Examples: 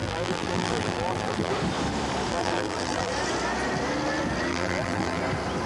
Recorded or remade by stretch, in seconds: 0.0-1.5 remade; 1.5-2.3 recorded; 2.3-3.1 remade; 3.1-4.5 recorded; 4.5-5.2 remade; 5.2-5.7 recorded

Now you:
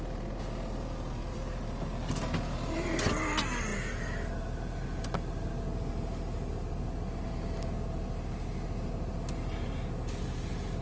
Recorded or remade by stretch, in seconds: 0.0-1.2 recorded; 1.2-1.7 remade; 1.7-10.8 recorded